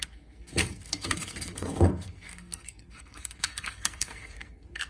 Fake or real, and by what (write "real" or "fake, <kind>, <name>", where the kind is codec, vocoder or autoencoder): fake, codec, SNAC